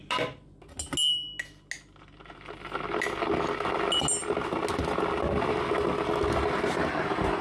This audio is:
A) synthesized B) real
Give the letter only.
B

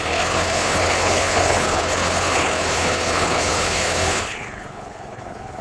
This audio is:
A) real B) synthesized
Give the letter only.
B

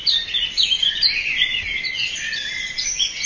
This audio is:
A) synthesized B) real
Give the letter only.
B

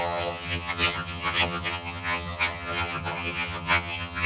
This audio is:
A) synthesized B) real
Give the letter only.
A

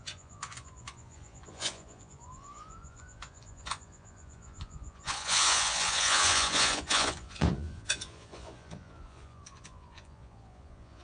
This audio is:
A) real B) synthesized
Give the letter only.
B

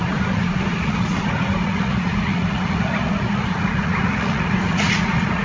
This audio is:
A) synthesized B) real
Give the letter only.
A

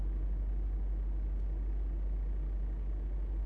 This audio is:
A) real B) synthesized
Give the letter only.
A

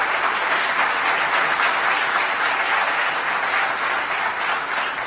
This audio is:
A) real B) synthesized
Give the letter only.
A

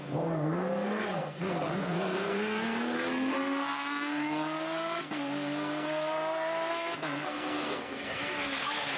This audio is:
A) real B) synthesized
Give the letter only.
B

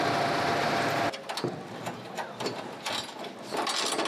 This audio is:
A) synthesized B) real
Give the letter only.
B